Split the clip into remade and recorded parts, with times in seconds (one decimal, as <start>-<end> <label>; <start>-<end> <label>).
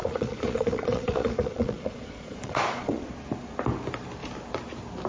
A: 0.0-3.1 remade; 3.1-5.1 recorded